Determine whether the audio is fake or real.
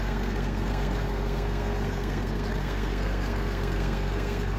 fake